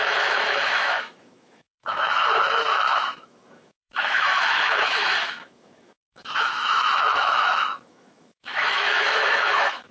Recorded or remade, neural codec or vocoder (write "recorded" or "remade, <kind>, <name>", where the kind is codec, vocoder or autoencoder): remade, autoencoder, DAC-VAE